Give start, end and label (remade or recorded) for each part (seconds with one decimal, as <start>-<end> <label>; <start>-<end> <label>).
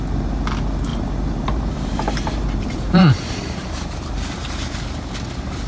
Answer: 0.0-0.9 recorded; 0.9-4.1 remade; 4.1-5.7 recorded